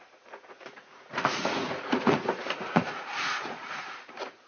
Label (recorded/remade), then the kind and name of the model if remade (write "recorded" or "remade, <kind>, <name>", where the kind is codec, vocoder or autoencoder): remade, vocoder, Vocos